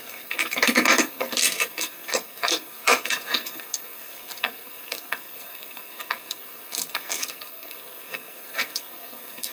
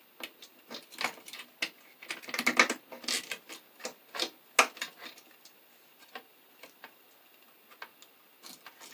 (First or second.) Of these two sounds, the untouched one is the second